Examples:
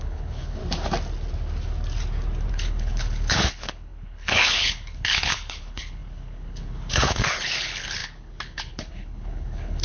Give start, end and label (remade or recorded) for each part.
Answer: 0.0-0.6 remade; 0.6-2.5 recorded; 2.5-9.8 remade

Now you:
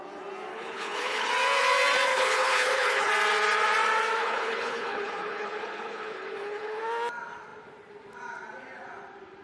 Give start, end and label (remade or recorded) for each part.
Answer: 0.0-0.5 recorded; 0.5-1.3 remade; 1.3-2.1 recorded; 2.1-3.1 remade; 3.1-4.2 recorded; 4.2-6.8 remade; 6.8-9.4 recorded

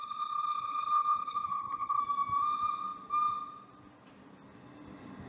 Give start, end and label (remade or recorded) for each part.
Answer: 0.0-2.0 remade; 2.0-5.3 recorded